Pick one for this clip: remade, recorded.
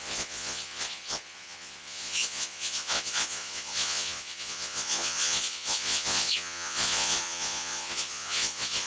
remade